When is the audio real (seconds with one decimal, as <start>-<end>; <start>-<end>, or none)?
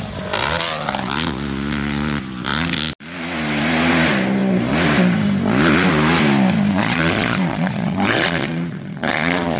0.0-6.7